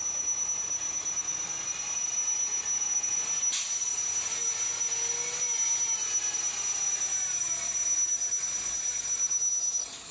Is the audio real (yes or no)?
yes